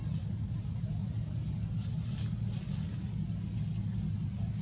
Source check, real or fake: real